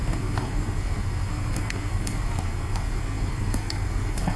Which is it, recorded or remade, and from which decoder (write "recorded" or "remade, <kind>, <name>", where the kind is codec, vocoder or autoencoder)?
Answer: remade, codec, SNAC